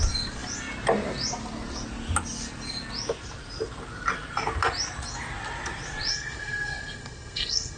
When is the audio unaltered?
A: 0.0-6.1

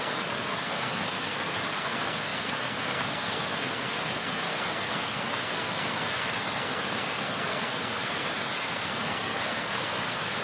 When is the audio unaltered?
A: none

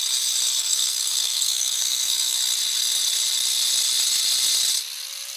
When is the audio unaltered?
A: 0.0-0.6; 2.4-5.4

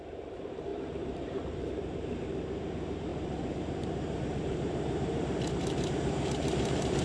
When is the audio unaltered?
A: none

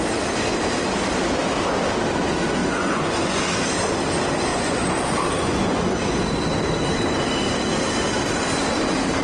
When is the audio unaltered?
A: 0.0-2.6; 3.4-4.5; 5.0-5.4; 6.0-9.2

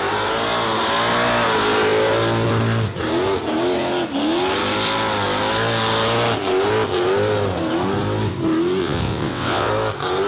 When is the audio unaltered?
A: 0.0-8.8; 9.7-10.3

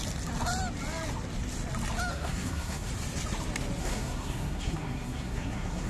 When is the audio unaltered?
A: 0.0-2.1; 2.9-3.8

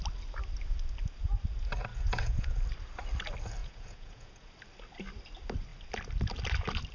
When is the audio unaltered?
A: 0.0-1.9; 2.6-3.6; 4.5-6.9